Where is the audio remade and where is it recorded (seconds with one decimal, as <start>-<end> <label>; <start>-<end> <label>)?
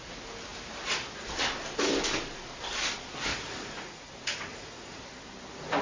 0.0-3.3 recorded; 3.3-4.1 remade; 4.1-4.5 recorded; 4.5-5.0 remade; 5.0-5.8 recorded